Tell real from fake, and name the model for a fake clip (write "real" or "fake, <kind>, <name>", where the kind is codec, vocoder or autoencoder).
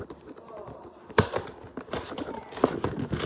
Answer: real